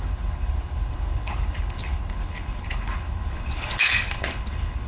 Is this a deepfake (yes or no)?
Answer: yes